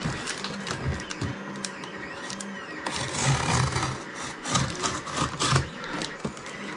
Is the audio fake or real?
real